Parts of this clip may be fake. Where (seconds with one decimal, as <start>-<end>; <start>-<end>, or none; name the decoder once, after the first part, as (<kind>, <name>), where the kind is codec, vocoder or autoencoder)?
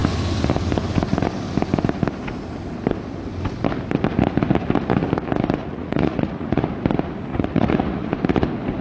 5.6-6.7 (vocoder, Vocos); 7.3-8.1